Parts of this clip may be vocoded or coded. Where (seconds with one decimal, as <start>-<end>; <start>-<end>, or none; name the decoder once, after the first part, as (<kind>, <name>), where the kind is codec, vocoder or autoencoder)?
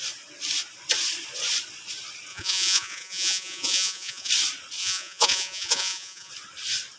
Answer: 2.3-4.3 (vocoder, Vocos); 4.8-6.3